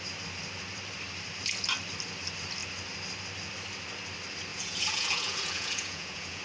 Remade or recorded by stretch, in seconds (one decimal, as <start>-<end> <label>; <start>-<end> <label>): 0.0-4.5 recorded; 4.5-6.4 remade

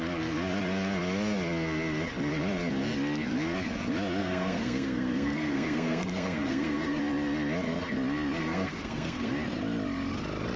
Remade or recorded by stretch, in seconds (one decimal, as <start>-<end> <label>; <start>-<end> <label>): 0.0-4.2 recorded; 4.2-7.0 remade; 7.0-8.4 recorded; 8.4-9.3 remade; 9.3-10.6 recorded

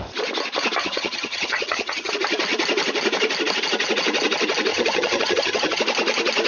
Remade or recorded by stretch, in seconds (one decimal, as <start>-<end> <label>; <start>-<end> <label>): 0.0-0.8 recorded; 0.8-2.1 remade; 2.1-4.7 recorded; 4.7-5.8 remade; 5.8-6.5 recorded

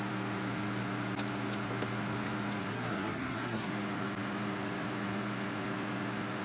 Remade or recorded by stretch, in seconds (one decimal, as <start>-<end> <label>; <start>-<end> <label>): 0.0-2.7 recorded; 2.7-3.7 remade; 3.7-6.4 recorded

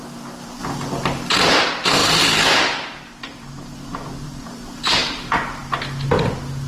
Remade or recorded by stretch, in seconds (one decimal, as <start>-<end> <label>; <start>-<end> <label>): 0.0-0.6 remade; 0.6-1.3 recorded; 1.3-5.6 remade; 5.6-6.7 recorded

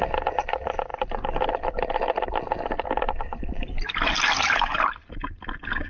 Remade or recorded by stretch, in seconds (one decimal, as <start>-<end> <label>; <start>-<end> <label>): 0.0-5.9 recorded

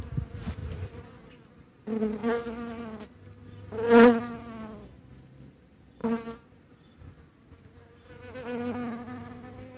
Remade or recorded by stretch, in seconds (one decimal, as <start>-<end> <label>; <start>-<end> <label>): 0.0-9.8 recorded

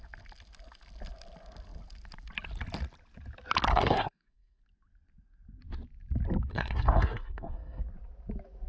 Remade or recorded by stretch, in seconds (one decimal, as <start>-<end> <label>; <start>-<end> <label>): 0.0-3.7 recorded; 3.7-4.6 remade; 4.6-6.5 recorded; 6.5-7.8 remade; 7.8-8.7 recorded